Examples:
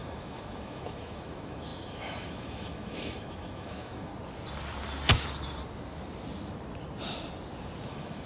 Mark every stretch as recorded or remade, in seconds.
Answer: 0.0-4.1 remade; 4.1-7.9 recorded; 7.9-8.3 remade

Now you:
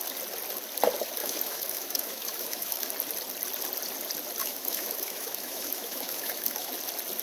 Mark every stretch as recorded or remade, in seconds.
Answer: 0.0-1.2 recorded; 1.2-2.9 remade; 2.9-4.4 recorded; 4.4-6.7 remade; 6.7-7.2 recorded

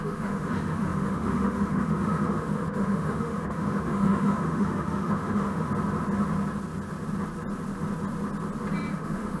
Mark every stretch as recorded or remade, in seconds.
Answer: 0.0-5.7 remade; 5.7-8.9 recorded; 8.9-9.4 remade

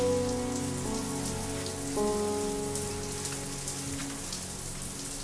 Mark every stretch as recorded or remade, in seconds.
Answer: 0.0-5.2 recorded

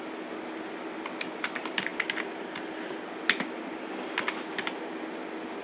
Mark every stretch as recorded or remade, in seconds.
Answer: 0.0-5.6 recorded

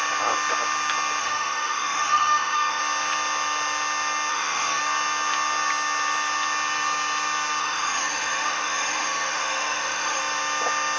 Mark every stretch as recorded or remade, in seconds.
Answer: 0.0-1.2 recorded; 1.2-2.8 remade; 2.8-4.3 recorded; 4.3-4.8 remade; 4.8-7.6 recorded; 7.6-10.2 remade; 10.2-11.0 recorded

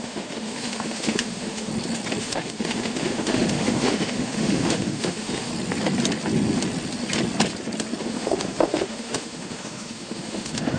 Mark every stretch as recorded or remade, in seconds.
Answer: 0.0-1.7 remade; 1.7-2.2 recorded; 2.2-5.5 remade; 5.5-8.0 recorded; 8.0-10.8 remade